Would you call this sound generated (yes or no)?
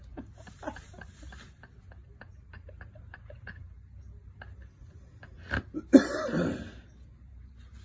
no